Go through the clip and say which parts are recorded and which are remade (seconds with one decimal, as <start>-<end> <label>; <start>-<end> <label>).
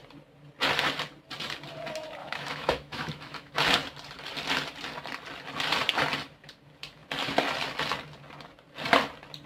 0.0-2.2 recorded; 2.2-3.6 remade; 3.6-9.5 recorded